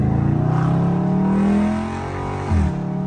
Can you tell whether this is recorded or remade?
recorded